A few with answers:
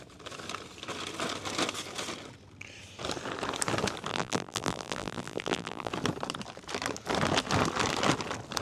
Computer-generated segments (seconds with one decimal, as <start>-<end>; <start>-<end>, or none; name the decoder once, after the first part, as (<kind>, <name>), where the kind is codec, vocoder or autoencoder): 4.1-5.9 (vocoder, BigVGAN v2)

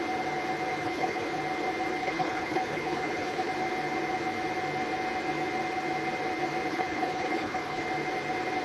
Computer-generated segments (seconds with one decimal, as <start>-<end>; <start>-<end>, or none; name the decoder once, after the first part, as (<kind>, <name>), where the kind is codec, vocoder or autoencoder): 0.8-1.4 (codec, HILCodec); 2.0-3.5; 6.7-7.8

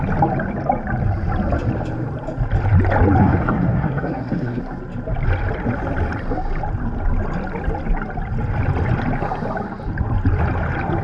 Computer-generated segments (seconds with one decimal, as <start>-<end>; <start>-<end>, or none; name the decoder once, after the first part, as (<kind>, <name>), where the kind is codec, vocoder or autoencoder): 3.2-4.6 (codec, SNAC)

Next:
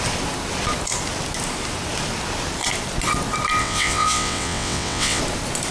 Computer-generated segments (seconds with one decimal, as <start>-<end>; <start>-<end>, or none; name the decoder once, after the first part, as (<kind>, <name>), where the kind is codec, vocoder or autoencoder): 3.6-5.2 (vocoder, WaveNeXt)